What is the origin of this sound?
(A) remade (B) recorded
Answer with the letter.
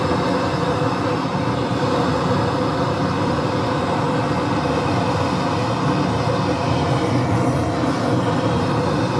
B